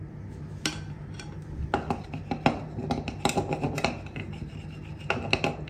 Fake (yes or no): no